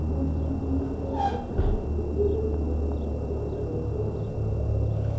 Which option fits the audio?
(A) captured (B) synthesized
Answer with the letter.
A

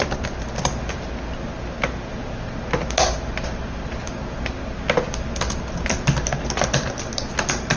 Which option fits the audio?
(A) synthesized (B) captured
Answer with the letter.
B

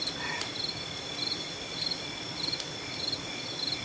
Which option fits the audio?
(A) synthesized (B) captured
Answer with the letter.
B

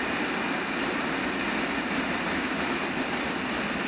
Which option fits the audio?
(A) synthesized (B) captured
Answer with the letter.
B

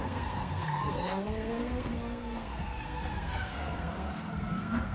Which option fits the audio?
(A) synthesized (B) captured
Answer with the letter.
A